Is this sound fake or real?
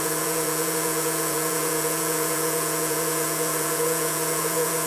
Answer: fake